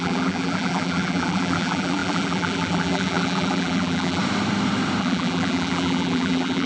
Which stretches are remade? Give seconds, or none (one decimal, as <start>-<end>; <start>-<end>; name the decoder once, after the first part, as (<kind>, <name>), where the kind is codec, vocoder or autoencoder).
0.0-4.2 (vocoder, BigVGAN v2); 5.0-6.7